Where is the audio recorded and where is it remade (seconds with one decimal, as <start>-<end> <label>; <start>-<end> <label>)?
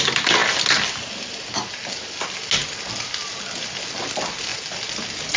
0.0-5.4 recorded